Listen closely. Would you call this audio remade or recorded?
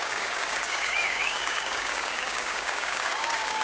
remade